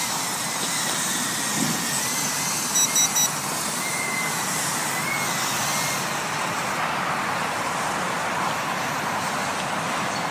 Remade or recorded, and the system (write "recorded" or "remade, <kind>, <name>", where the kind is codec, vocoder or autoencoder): recorded